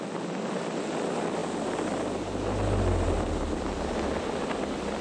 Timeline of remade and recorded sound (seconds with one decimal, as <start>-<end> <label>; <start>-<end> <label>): 0.0-5.0 recorded